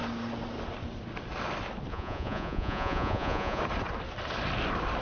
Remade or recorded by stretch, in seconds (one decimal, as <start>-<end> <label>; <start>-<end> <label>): 0.0-1.9 recorded; 1.9-3.6 remade; 3.6-5.0 recorded